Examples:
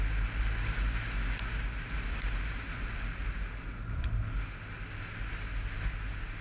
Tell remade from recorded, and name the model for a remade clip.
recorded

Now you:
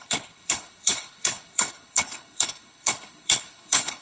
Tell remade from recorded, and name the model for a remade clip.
remade, codec, HILCodec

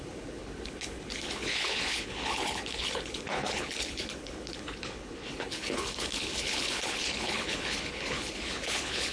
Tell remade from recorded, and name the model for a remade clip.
remade, codec, HILCodec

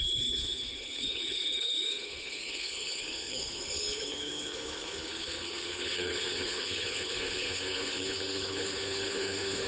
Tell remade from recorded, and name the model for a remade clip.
remade, codec, HILCodec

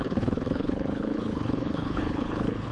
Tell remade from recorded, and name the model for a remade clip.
remade, codec, HILCodec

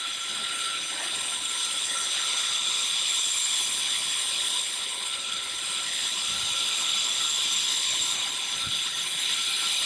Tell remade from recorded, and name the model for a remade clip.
remade, codec, HILCodec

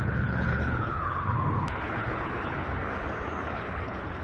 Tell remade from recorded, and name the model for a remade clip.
remade, codec, HILCodec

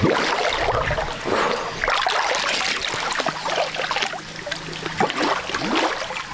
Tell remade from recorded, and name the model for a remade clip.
recorded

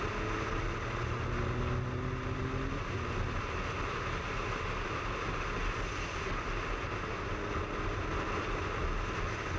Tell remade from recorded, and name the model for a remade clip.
recorded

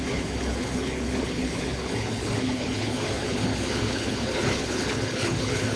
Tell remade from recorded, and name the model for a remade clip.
remade, codec, HILCodec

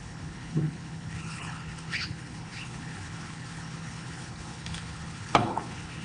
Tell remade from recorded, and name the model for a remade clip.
remade, codec, HILCodec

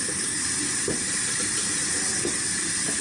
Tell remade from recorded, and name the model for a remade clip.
recorded